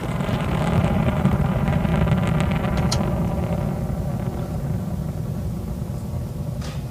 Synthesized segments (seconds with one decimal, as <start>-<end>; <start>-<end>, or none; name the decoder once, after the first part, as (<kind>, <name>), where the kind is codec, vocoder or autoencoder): 0.0-1.9 (vocoder, BigVGAN v2); 5.3-6.9